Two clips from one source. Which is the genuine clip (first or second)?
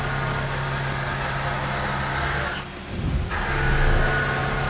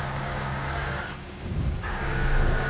first